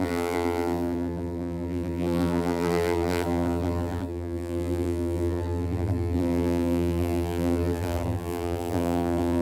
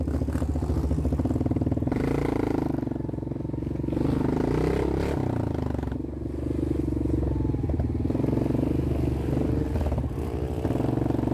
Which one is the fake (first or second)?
first